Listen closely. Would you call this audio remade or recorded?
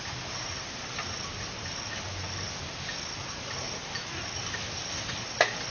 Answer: recorded